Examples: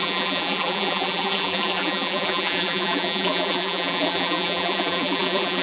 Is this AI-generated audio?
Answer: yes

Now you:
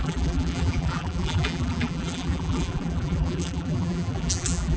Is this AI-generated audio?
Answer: yes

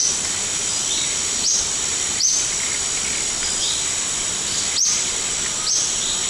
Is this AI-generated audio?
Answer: no